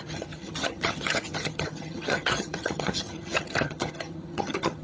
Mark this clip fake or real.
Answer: fake